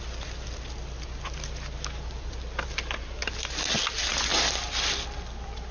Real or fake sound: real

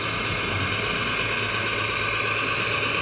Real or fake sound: real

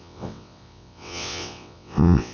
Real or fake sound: fake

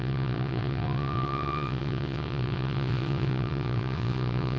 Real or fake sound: fake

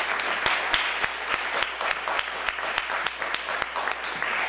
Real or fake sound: real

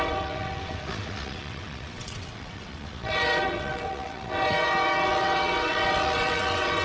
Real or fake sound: fake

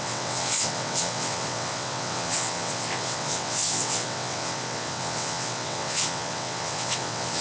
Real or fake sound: fake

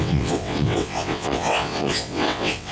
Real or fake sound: fake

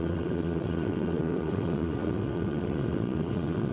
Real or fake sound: fake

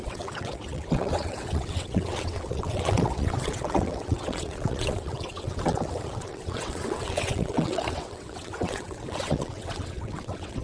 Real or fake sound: fake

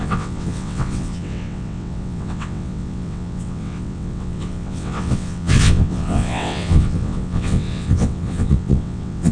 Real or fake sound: fake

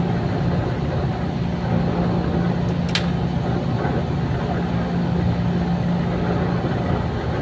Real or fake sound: real